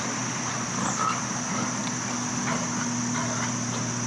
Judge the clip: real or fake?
real